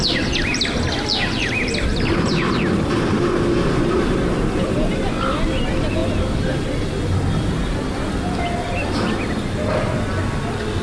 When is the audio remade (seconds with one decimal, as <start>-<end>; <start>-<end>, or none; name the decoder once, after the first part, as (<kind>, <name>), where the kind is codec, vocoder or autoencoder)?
none